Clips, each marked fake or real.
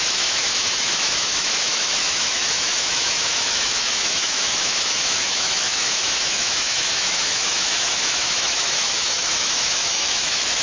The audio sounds fake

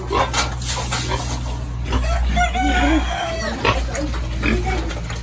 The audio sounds real